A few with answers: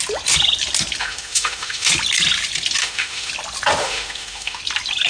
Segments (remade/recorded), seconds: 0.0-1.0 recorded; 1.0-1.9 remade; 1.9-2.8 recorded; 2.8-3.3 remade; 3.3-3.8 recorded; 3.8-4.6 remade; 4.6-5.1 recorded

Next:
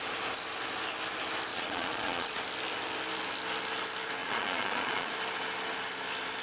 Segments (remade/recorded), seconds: 0.0-1.5 recorded; 1.5-2.4 remade; 2.4-4.2 recorded; 4.2-5.1 remade; 5.1-6.4 recorded

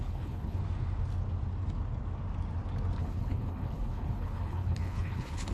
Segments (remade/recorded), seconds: 0.0-0.6 remade; 0.6-3.0 recorded; 3.0-5.5 remade

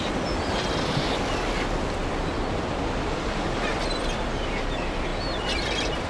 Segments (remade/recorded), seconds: 0.0-6.1 recorded